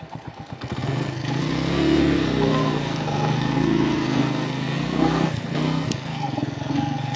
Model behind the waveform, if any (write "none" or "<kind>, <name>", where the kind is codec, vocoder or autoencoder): codec, SNAC